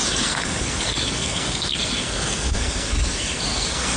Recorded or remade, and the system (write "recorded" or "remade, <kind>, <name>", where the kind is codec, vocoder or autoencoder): remade, codec, SNAC